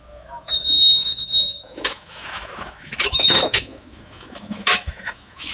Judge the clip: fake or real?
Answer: fake